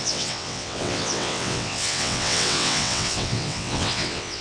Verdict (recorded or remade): remade